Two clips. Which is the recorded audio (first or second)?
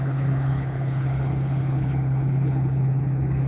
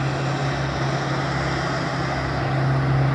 second